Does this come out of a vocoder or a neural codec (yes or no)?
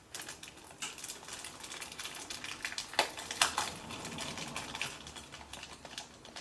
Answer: no